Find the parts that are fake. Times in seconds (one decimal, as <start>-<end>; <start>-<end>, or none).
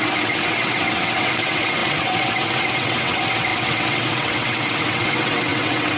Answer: 0.0-6.0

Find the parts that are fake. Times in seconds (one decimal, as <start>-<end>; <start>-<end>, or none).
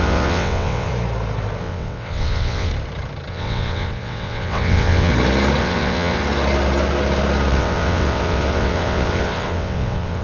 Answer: 0.0-0.9; 1.6-2.7; 3.3-5.1; 5.6-6.2; 7.5-10.2